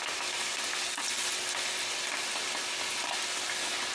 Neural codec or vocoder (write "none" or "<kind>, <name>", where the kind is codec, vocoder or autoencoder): none